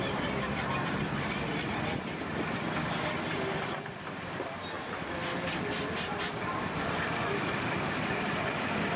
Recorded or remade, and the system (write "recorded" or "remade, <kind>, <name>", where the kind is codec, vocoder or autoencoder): remade, vocoder, BigVGAN v2